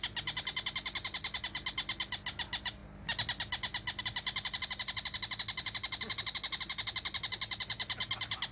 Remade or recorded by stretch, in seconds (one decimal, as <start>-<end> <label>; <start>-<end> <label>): 0.0-8.5 recorded